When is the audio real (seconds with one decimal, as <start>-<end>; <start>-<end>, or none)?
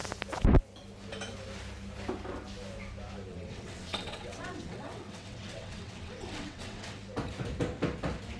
0.0-3.3; 7.0-8.4